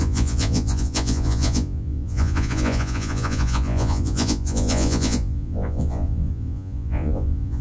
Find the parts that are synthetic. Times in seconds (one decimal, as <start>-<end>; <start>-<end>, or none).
0.0-7.6